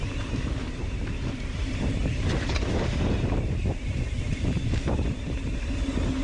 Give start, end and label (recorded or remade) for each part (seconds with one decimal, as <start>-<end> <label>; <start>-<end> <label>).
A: 0.0-6.2 remade